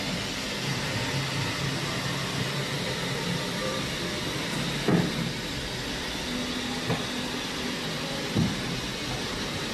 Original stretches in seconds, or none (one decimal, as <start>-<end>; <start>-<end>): 0.0-9.7